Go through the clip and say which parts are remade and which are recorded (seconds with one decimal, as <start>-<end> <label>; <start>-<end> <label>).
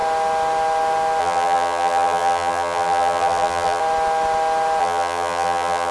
0.0-1.2 recorded; 1.2-3.8 remade; 3.8-4.8 recorded; 4.8-5.9 remade